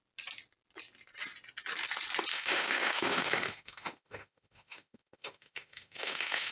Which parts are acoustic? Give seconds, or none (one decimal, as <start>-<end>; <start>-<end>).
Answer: 0.0-2.3